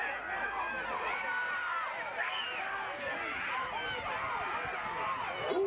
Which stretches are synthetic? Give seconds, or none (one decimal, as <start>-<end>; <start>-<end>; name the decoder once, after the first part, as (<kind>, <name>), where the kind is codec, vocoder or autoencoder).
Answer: none